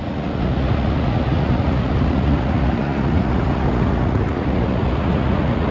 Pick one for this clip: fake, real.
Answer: fake